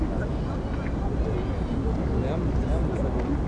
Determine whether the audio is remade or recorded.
recorded